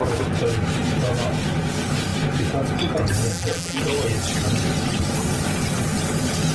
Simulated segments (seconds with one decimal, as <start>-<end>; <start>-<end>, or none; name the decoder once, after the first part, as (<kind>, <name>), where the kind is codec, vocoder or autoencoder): 3.3-3.8 (vocoder, BigVGAN v2)